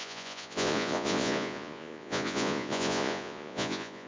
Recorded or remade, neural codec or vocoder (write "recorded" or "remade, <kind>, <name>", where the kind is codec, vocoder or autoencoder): remade, vocoder, Vocos